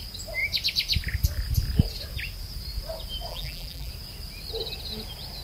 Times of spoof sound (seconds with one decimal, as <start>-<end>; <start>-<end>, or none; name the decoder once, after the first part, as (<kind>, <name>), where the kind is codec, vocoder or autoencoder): 3.3-3.9 (vocoder, BigVGAN v2)